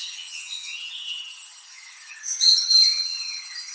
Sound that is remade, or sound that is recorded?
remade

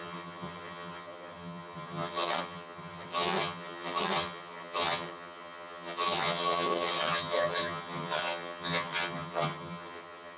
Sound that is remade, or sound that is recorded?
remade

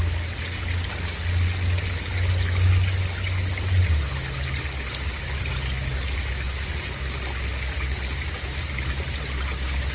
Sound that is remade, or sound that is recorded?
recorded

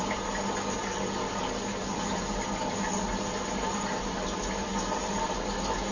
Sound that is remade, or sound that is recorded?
recorded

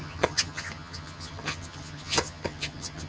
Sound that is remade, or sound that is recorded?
remade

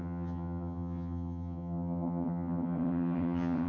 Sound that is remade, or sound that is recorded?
remade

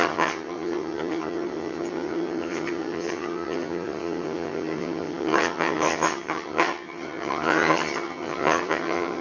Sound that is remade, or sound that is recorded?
remade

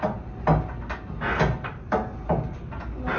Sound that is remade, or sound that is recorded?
recorded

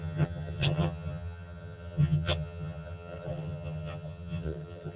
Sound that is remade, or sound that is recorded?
remade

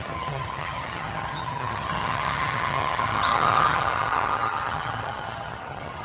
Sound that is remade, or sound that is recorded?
remade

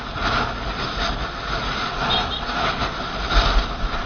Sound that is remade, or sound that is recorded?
recorded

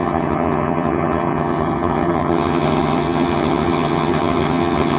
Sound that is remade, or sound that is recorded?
remade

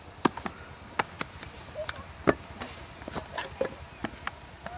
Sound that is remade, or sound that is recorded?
recorded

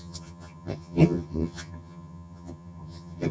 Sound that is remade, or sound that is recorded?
remade